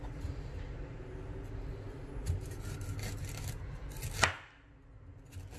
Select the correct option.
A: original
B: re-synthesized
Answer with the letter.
A